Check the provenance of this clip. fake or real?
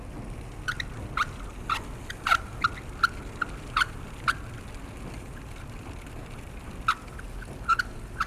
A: real